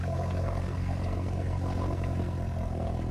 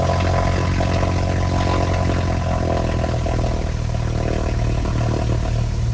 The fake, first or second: first